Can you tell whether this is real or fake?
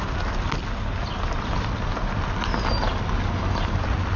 real